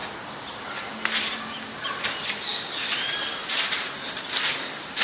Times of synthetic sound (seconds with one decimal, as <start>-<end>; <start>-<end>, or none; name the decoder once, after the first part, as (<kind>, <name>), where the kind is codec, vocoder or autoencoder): 2.5-3.9 (vocoder, BigVGAN v2)